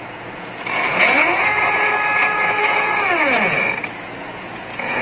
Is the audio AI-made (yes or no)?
yes